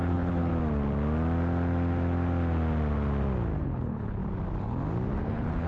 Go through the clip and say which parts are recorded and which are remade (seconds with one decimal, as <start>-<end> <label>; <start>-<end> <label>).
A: 0.0-0.5 remade; 0.5-3.6 recorded; 3.6-4.2 remade; 4.2-5.2 recorded; 5.2-5.7 remade